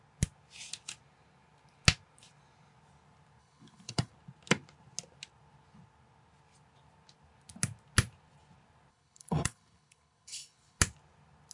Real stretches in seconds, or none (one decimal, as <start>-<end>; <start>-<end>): 0.0-3.4; 4.1-8.9; 10.8-11.5